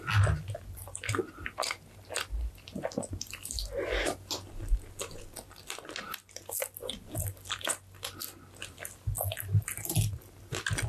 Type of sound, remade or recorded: recorded